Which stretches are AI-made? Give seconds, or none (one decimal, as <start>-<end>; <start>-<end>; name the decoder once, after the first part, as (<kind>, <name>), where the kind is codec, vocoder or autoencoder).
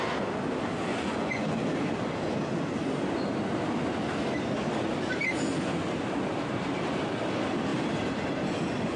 0.9-1.6 (vocoder, Vocos)